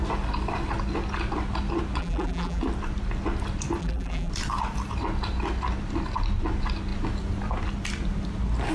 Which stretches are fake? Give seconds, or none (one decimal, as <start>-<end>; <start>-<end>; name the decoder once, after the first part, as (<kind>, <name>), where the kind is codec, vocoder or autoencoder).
2.0-2.6 (vocoder, BigVGAN v2); 3.8-4.3